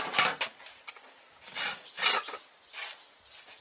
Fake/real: real